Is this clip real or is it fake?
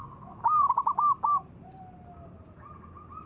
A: real